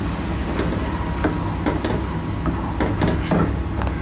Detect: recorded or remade recorded